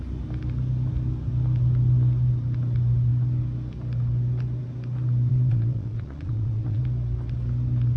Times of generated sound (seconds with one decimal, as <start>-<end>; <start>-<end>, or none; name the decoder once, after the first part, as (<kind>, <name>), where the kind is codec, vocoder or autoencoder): 5.3-6.8 (vocoder, Vocos)